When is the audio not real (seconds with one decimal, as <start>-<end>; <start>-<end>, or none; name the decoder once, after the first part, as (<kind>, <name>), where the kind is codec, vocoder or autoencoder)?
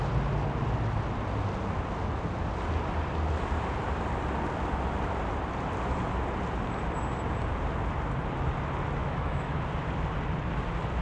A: 9.0-9.6 (autoencoder, DAC-VAE)